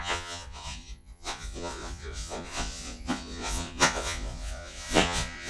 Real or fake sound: fake